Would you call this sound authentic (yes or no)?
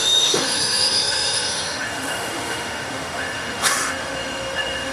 no